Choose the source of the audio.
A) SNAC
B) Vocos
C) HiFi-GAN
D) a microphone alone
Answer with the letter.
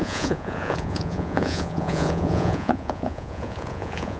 B